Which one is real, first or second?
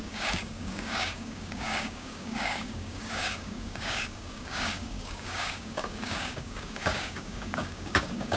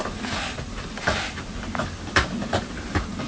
second